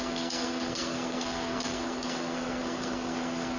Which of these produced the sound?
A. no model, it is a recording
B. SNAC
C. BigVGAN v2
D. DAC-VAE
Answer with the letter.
B